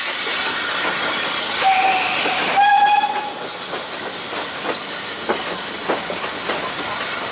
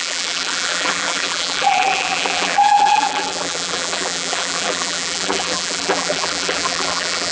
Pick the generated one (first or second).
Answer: second